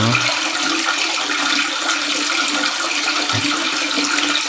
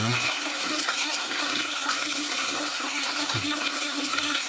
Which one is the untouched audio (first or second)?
first